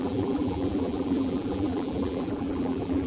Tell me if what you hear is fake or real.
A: fake